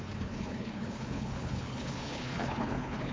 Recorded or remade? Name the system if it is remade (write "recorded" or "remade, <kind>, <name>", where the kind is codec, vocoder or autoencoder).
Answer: remade, codec, HILCodec